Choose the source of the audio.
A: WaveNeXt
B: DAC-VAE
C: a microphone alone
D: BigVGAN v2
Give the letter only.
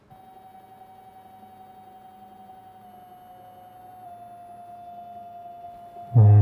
C